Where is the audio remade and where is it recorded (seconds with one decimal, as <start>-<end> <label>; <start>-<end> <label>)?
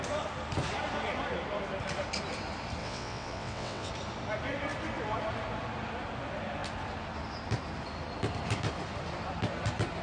0.0-2.8 recorded; 2.8-3.9 remade; 3.9-10.0 recorded